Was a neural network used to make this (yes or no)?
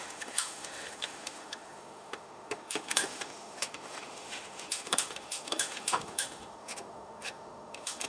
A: yes